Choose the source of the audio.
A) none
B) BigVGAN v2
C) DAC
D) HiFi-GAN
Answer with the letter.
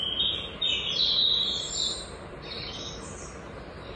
B